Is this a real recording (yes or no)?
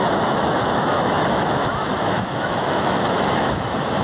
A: no